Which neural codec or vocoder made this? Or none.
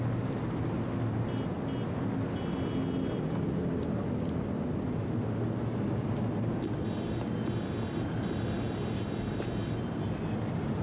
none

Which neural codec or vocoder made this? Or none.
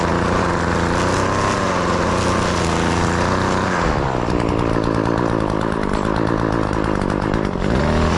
none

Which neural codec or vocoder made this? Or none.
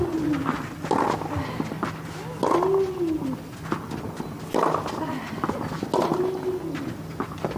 none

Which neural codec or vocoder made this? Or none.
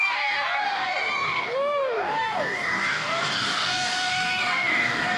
codec, DAC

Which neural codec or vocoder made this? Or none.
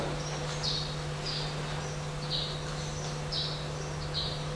none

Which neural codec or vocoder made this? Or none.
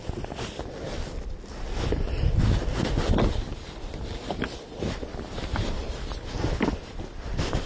none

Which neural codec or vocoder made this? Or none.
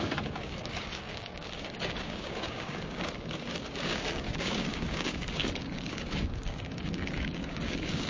codec, DAC